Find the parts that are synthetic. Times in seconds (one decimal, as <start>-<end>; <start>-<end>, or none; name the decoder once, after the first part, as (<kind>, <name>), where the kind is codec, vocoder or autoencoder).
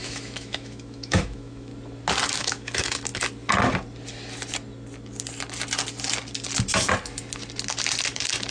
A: 0.0-1.7 (autoencoder, DAC-VAE); 2.3-3.1